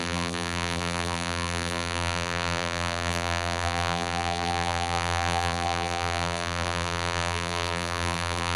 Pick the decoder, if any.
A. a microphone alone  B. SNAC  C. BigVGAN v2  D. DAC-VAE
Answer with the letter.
C